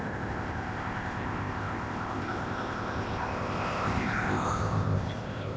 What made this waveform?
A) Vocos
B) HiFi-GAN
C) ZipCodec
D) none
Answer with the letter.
C